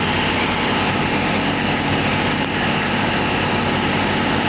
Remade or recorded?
recorded